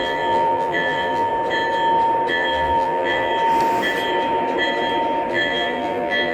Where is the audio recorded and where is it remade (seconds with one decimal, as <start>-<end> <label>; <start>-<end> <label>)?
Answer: 0.0-1.3 remade; 1.3-2.3 recorded; 2.3-3.3 remade; 3.3-5.3 recorded; 5.3-6.3 remade